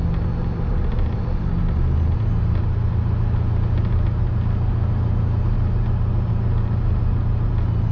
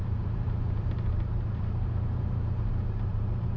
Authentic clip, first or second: first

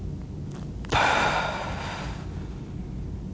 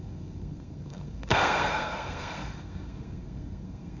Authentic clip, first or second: first